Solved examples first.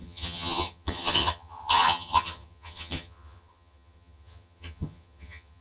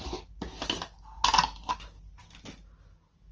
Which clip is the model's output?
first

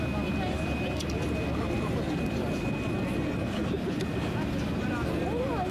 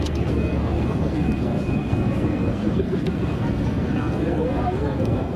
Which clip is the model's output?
second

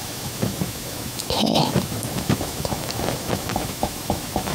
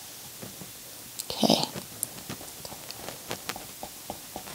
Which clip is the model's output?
first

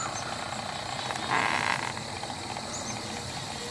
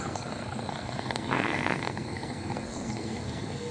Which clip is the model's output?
second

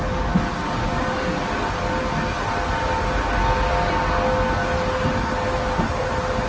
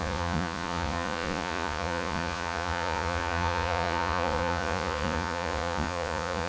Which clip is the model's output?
second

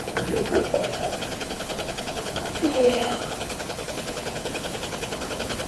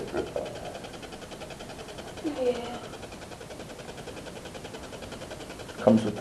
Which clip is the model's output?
first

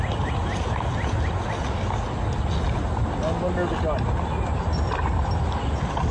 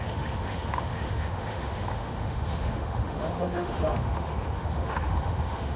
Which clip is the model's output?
second